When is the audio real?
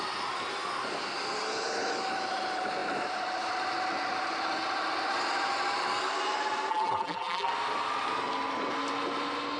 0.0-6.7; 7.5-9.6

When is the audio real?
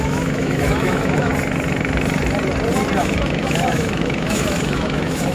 1.3-3.0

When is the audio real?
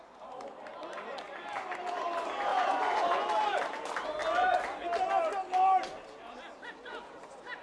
0.0-2.5; 3.3-7.6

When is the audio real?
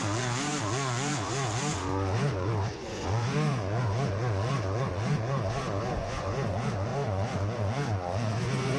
none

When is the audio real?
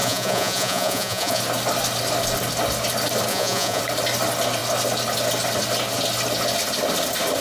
1.4-3.3; 3.8-7.4